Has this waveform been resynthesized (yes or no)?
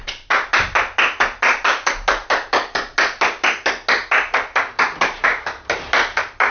no